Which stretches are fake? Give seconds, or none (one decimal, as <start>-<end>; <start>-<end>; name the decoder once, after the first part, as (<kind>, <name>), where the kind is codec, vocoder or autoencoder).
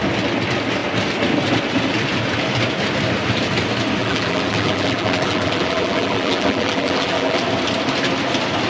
4.0-7.4 (vocoder, BigVGAN v2)